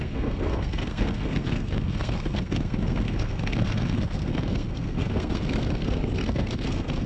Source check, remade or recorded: remade